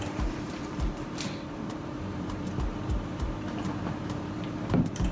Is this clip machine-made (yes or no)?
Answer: yes